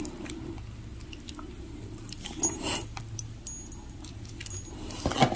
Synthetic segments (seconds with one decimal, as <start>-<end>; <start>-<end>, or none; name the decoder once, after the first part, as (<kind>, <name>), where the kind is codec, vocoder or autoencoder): none